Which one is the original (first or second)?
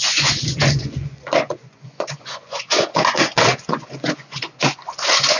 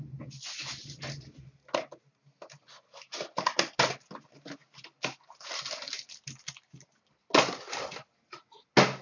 second